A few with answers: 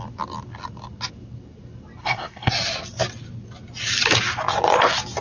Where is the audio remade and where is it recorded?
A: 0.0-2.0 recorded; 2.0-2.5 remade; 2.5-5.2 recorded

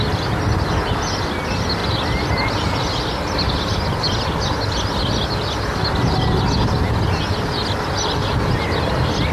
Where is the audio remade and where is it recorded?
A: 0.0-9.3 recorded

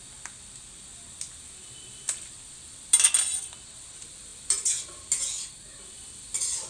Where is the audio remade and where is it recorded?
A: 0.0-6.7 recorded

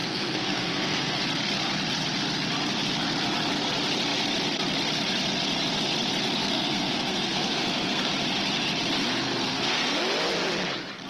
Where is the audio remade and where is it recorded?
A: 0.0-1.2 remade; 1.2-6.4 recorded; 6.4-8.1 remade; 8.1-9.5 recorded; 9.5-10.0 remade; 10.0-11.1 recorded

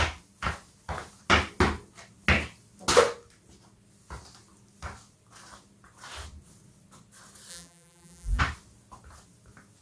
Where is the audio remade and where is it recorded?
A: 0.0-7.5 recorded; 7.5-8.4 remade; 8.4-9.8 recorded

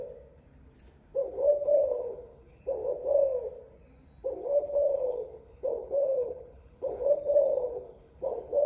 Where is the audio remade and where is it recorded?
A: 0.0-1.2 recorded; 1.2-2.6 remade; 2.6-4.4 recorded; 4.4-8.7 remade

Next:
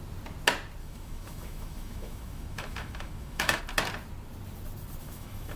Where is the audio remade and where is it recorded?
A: 0.0-0.8 recorded; 0.8-3.6 remade; 3.6-5.0 recorded; 5.0-5.6 remade